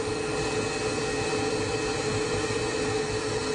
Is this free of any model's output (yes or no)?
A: yes